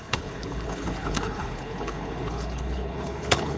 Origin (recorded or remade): remade